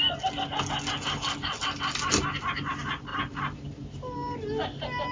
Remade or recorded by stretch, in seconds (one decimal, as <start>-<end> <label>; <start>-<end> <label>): 0.0-5.1 recorded